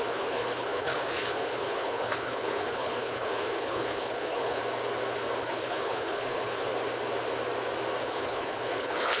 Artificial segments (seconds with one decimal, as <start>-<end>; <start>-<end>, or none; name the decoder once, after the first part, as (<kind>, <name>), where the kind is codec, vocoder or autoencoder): 0.0-4.6 (codec, HILCodec); 5.4-6.7; 8.0-9.2